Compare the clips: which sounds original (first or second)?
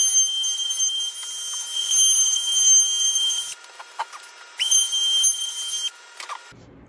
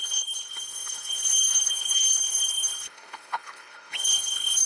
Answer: first